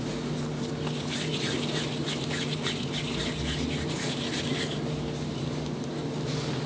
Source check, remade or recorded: recorded